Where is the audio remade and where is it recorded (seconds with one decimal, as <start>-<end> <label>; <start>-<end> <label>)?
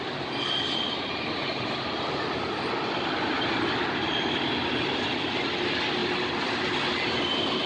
0.0-7.7 recorded